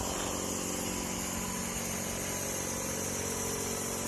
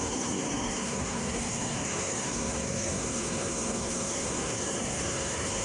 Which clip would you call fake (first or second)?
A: second